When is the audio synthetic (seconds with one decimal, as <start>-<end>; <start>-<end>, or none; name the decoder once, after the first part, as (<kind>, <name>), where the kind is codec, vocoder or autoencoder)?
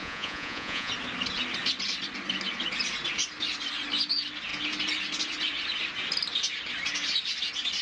0.0-0.9 (vocoder, Vocos)